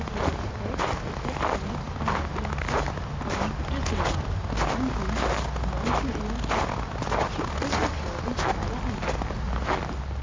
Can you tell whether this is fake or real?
real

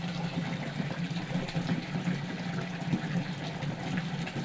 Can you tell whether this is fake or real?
real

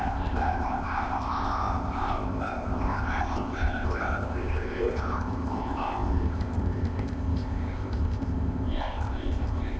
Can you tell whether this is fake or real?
fake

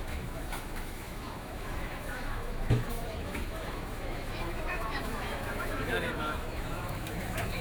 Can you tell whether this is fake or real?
fake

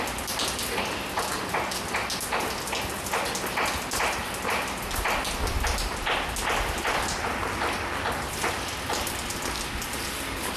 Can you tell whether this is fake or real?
real